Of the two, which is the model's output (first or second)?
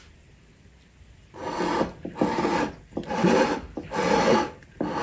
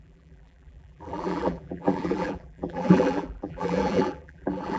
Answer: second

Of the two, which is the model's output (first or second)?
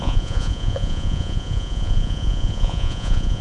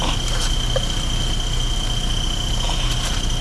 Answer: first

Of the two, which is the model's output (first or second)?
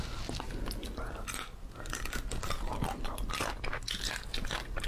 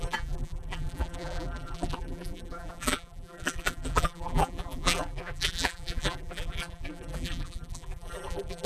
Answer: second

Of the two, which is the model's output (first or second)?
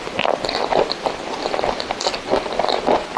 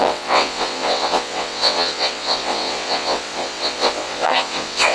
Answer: second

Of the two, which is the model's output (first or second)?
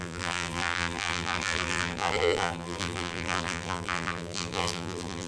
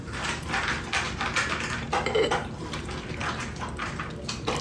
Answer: first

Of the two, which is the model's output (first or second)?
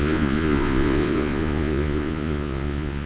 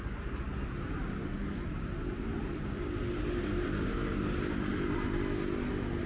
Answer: first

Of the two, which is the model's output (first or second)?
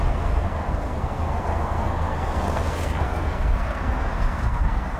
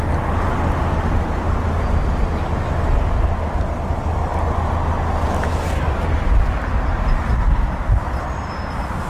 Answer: first